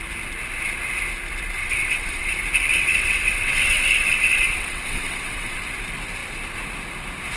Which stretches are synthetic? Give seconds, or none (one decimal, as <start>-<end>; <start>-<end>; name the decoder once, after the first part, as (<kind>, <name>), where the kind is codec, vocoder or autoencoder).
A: 1.6-2.3 (vocoder, WaveNeXt); 2.7-5.6